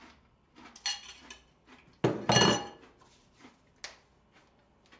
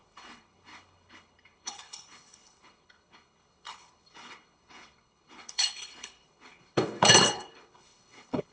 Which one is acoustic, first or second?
first